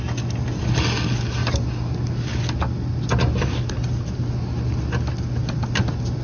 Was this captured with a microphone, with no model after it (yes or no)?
yes